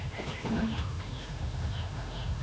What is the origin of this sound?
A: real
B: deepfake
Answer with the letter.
B